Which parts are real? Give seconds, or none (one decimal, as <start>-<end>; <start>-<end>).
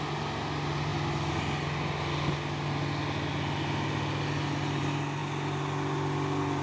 0.0-6.6